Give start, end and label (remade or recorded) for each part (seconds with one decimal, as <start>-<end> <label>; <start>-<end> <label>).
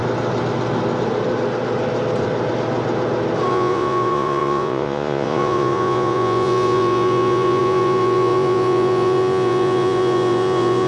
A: 0.0-3.5 recorded; 3.5-10.9 remade